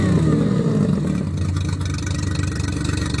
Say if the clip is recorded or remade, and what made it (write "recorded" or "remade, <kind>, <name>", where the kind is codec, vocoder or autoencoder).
recorded